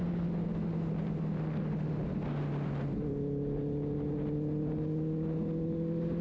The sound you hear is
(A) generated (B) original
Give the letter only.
B